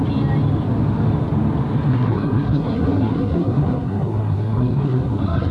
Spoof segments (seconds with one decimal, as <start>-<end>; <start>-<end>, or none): 1.9-5.5